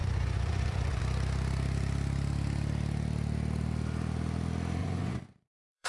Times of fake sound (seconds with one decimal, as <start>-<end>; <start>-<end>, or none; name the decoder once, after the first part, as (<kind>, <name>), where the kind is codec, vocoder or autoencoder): 0.0-1.0 (vocoder, Vocos); 4.8-5.9

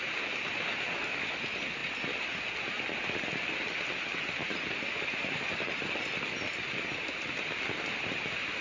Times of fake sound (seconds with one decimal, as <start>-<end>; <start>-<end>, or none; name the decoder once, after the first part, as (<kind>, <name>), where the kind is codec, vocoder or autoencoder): none

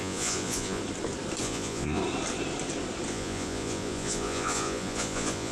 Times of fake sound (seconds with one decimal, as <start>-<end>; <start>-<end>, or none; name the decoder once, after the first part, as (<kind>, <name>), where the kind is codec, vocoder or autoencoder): 0.0-0.8 (vocoder, Vocos); 1.4-2.0; 3.1-5.5

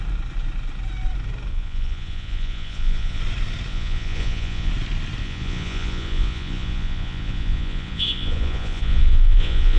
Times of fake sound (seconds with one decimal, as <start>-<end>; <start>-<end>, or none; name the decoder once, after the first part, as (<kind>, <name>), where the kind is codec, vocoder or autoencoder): 1.5-3.2 (vocoder, Vocos); 3.7-4.7; 5.2-9.8

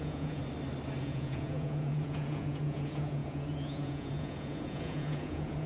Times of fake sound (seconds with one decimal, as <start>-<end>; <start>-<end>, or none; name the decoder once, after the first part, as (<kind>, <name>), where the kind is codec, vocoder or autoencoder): 0.0-0.4 (vocoder, Vocos); 1.0-5.7

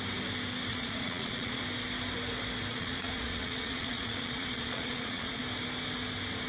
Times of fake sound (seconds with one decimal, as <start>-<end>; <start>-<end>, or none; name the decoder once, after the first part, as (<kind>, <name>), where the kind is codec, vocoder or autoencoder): 0.7-1.6 (vocoder, Vocos); 2.7-5.4

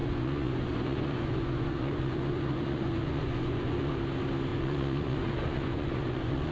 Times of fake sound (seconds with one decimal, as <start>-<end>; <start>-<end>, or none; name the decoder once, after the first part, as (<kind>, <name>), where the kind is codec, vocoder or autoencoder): 0.0-3.9 (vocoder, Vocos); 4.5-6.5

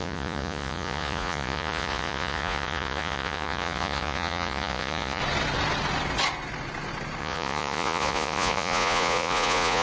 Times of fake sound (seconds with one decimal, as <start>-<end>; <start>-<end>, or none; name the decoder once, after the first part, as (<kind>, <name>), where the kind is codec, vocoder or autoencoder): 0.0-5.2 (vocoder, Vocos); 7.2-9.8